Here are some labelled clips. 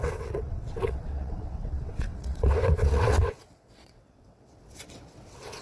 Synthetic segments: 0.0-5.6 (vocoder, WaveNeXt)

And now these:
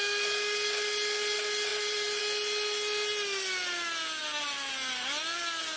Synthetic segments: 1.7-2.2 (vocoder, BigVGAN v2)

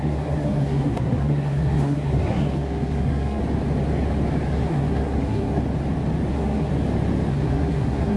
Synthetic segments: 0.0-3.4 (codec, SNAC); 4.5-5.6; 6.3-6.7; 7.3-8.2

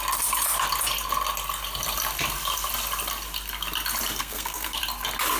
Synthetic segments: 4.2-4.8 (codec, SNAC)

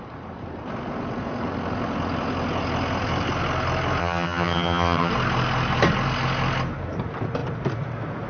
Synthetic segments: 4.0-5.1 (vocoder, HiFi-GAN)

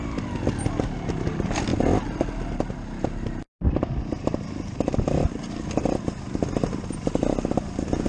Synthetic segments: none